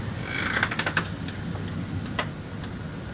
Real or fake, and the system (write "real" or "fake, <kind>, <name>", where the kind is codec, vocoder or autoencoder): real